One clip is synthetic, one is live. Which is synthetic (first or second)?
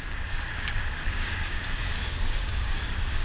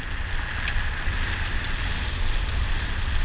first